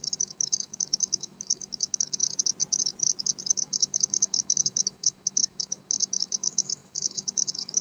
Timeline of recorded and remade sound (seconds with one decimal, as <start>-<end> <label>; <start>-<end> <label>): 0.0-2.2 remade; 2.2-3.5 recorded; 3.5-7.8 remade